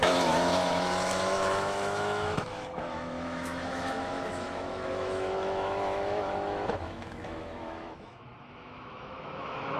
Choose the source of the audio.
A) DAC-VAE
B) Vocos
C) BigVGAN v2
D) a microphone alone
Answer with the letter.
A